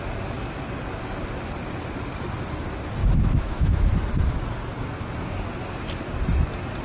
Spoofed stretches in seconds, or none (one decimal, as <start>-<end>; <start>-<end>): 3.0-3.9

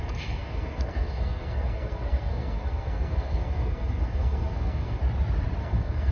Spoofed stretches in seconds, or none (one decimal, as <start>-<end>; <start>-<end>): 0.0-5.0; 5.6-6.1

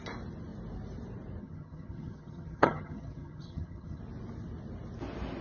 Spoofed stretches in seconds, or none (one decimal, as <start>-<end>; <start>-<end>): 1.4-4.0

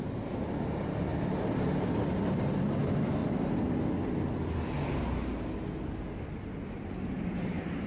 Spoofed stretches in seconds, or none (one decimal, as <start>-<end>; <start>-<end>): none